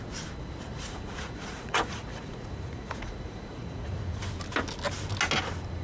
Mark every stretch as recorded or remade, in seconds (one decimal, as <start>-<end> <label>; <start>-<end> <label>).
0.0-0.7 recorded; 0.7-4.2 remade; 4.2-5.8 recorded